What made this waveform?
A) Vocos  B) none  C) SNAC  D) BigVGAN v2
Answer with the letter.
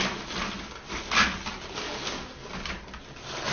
B